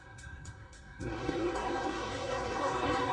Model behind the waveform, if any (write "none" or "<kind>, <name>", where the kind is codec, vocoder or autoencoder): codec, SNAC